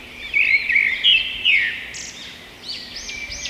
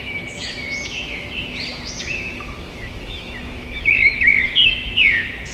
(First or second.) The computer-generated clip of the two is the second